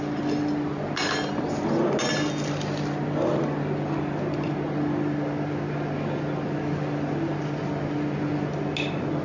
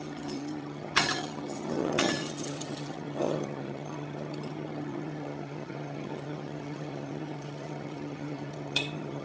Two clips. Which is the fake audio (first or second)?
second